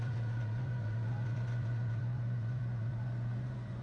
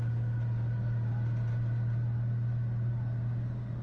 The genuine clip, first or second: second